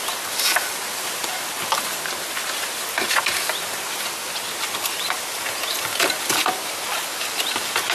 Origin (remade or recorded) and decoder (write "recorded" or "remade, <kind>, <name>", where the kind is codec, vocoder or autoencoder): recorded